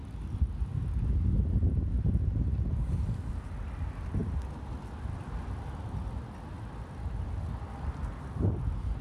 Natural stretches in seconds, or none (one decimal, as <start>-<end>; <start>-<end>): 0.0-9.0